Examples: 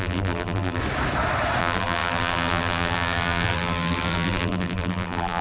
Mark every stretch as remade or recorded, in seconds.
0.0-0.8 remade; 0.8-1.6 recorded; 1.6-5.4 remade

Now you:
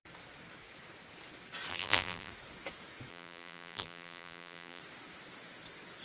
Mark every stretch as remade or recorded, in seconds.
0.0-1.7 recorded; 1.7-2.3 remade; 2.3-3.1 recorded; 3.1-4.8 remade; 4.8-6.0 recorded

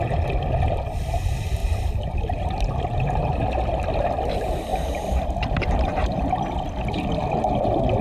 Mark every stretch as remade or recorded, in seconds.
0.0-1.6 recorded; 1.6-3.3 remade; 3.3-4.7 recorded; 4.7-6.3 remade; 6.3-8.0 recorded